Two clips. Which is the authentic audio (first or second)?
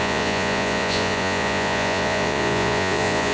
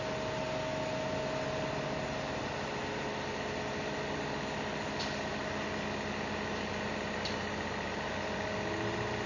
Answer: second